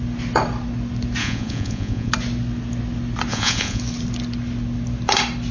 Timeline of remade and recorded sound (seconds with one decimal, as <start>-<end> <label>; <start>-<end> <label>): 0.0-1.2 recorded; 1.2-2.1 remade; 2.1-3.3 recorded; 3.3-3.8 remade; 3.8-5.5 recorded